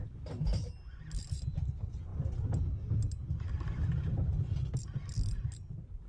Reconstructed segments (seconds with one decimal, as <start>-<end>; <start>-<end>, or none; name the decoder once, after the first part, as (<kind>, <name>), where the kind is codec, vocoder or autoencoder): none